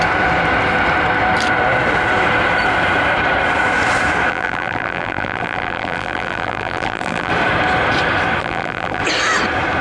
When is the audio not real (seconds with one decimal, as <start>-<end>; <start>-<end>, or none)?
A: 4.3-7.3; 8.4-9.0